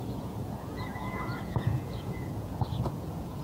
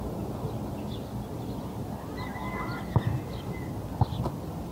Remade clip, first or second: first